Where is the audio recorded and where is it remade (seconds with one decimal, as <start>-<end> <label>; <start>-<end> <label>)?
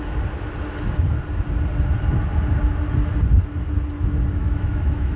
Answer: 0.0-4.4 recorded; 4.4-5.2 remade